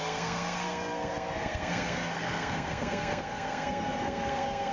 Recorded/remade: remade